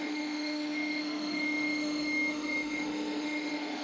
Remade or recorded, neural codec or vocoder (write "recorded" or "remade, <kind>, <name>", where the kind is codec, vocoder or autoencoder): remade, autoencoder, DAC-VAE